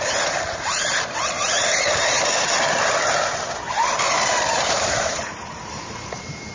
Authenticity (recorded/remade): remade